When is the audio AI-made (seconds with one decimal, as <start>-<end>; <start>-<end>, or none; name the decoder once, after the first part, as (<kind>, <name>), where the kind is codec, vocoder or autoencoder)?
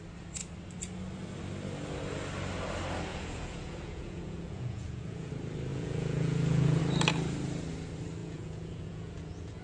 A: 3.1-5.3 (vocoder, Vocos); 5.7-6.8; 8.2-9.6